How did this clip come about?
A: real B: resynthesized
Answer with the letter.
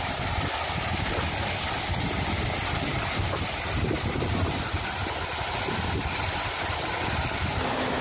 A